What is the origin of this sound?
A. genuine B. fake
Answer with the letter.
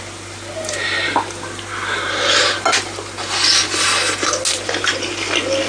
A